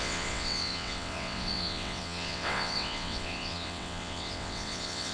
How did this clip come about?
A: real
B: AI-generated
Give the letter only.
B